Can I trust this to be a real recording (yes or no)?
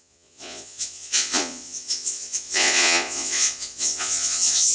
no